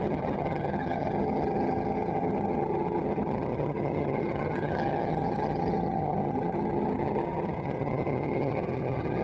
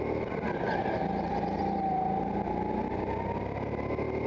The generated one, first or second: first